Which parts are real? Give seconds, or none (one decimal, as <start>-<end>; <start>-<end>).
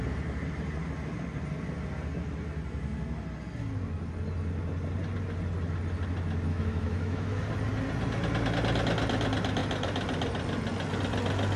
0.0-6.5; 7.5-11.6